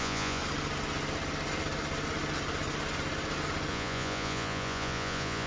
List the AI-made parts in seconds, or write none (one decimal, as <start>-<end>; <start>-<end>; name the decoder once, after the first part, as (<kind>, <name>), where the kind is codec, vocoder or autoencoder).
0.0-0.4 (vocoder, Vocos); 3.7-5.5